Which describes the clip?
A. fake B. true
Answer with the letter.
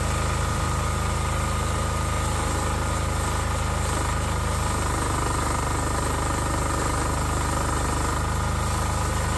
B